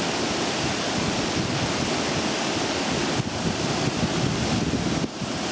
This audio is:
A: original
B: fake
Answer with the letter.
A